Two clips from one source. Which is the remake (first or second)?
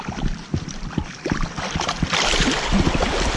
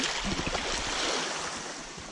first